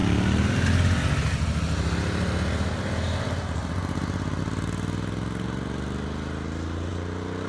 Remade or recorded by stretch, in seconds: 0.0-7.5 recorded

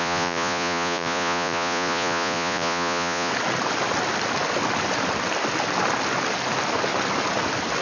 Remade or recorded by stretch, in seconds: 0.0-3.3 remade; 3.3-7.8 recorded

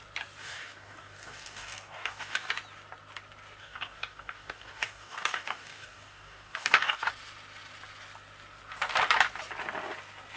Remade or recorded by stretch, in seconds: 0.0-0.4 recorded; 0.4-2.5 remade; 2.5-3.6 recorded; 3.6-7.1 remade; 7.1-10.4 recorded

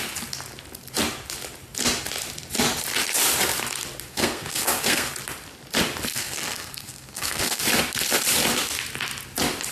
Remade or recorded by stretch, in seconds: 0.0-4.1 recorded; 4.1-5.1 remade; 5.1-6.1 recorded; 6.1-7.6 remade; 7.6-9.7 recorded